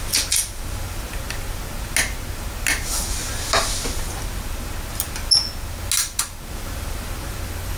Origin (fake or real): real